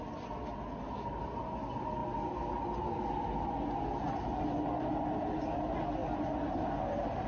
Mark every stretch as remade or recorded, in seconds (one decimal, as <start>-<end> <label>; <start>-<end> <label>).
0.0-7.3 recorded